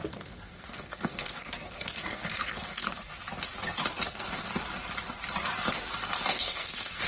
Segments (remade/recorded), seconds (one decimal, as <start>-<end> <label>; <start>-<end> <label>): 0.0-3.1 remade; 3.1-4.1 recorded; 4.1-4.5 remade; 4.5-6.3 recorded; 6.3-7.1 remade

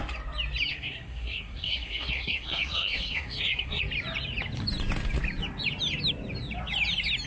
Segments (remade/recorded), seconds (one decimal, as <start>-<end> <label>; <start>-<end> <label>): 0.0-0.7 recorded; 0.7-3.8 remade; 3.8-7.3 recorded

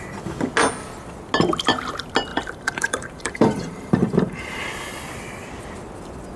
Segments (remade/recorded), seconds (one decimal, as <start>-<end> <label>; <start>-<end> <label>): 0.0-2.3 recorded; 2.3-4.6 remade; 4.6-6.4 recorded

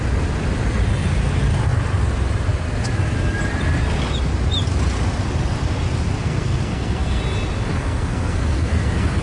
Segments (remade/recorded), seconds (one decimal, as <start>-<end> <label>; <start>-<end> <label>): 0.0-6.2 recorded; 6.2-7.2 remade; 7.2-7.7 recorded; 7.7-9.2 remade

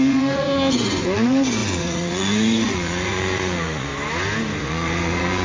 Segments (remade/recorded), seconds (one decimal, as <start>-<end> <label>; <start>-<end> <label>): 0.0-3.9 remade; 3.9-4.6 recorded; 4.6-5.4 remade

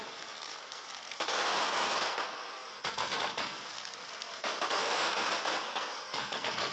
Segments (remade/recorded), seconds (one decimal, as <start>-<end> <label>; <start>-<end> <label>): 0.0-6.7 remade

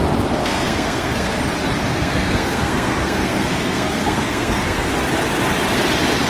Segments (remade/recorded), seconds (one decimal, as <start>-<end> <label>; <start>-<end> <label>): 0.0-0.4 recorded; 0.4-1.4 remade; 1.4-1.9 recorded; 1.9-4.9 remade; 4.9-6.3 recorded